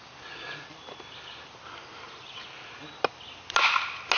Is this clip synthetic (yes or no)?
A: no